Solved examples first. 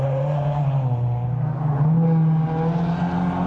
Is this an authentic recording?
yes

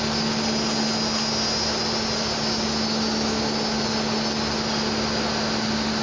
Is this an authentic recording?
yes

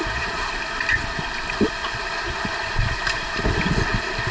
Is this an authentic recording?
yes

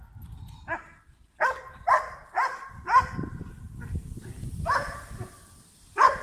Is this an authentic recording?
yes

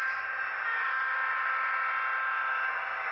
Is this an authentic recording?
yes